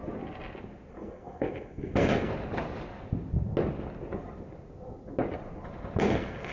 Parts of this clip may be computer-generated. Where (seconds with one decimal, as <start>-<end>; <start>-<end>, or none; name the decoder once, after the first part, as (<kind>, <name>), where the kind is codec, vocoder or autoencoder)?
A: 0.9-2.3 (codec, SNAC); 6.0-6.5